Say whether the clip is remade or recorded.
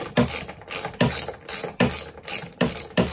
recorded